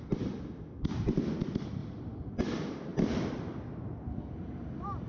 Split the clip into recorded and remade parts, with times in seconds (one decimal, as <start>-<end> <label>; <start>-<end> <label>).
0.0-5.1 recorded